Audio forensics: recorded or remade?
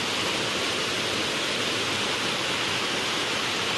recorded